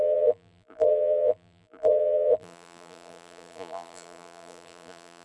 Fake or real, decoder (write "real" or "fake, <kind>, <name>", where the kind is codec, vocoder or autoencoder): fake, vocoder, BigVGAN v2